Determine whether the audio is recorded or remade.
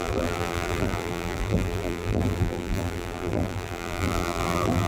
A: remade